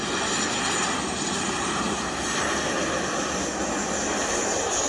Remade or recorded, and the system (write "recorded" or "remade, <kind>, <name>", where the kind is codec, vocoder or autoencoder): recorded